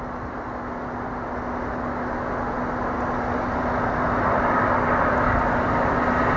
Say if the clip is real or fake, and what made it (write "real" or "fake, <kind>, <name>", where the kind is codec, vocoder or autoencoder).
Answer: real